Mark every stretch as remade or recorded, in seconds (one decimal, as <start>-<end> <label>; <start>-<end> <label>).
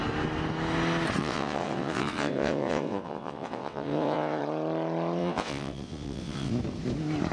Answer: 0.0-1.2 recorded; 1.2-4.4 remade; 4.4-5.2 recorded; 5.2-6.5 remade; 6.5-7.3 recorded